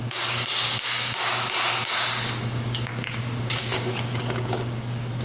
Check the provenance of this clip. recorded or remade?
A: remade